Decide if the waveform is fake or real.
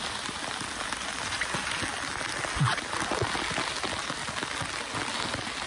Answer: real